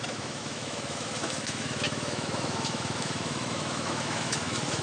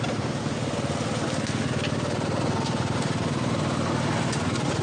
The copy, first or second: first